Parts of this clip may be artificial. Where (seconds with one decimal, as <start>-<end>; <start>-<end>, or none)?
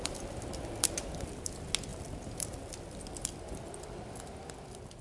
none